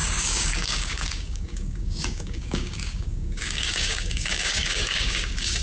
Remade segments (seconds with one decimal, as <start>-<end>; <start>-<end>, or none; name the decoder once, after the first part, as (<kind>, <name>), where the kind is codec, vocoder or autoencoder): 0.0-5.6 (codec, DAC)

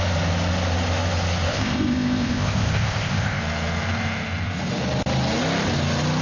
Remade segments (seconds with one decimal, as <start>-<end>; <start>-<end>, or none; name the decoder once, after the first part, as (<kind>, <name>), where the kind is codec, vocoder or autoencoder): 1.5-3.4 (codec, ZipCodec)

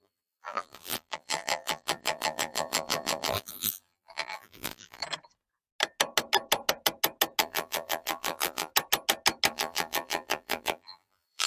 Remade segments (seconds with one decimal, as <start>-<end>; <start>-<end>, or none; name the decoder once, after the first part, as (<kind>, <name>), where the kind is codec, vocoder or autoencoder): 0.0-5.0 (vocoder, BigVGAN v2); 7.4-8.7; 9.5-11.5

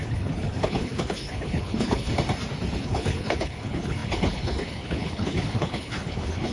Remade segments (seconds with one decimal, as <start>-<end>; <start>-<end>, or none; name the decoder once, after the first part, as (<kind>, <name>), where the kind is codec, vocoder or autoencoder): 0.0-2.1 (codec, HILCodec); 2.8-6.5

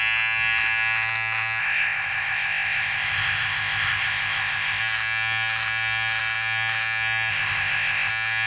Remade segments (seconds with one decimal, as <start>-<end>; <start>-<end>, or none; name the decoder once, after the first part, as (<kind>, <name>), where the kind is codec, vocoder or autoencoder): 1.6-4.8 (codec, ZipCodec); 7.3-8.1

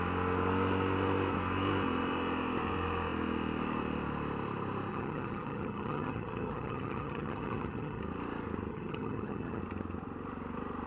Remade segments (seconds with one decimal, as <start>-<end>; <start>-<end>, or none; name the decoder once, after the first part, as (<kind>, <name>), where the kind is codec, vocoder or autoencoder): 4.9-8.0 (vocoder, HiFi-GAN); 8.7-9.6